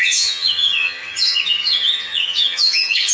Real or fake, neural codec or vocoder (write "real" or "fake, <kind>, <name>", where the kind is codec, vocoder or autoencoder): fake, vocoder, HiFi-GAN